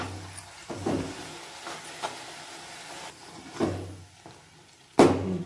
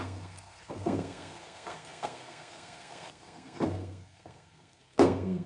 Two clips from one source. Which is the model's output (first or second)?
second